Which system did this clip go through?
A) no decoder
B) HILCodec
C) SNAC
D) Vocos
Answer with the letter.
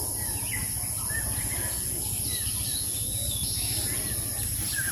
A